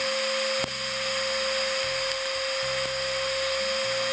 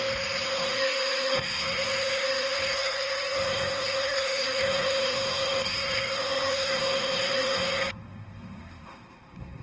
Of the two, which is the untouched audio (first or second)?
first